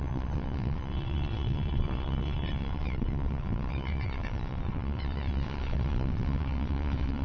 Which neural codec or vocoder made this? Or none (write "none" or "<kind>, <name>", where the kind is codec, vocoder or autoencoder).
vocoder, WaveNeXt